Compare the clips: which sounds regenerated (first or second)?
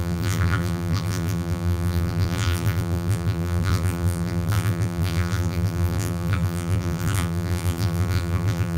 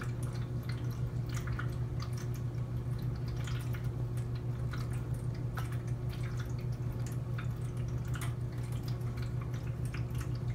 first